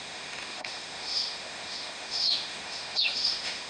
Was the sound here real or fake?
fake